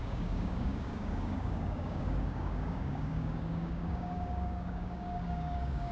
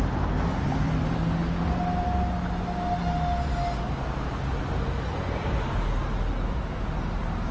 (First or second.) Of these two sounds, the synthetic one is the first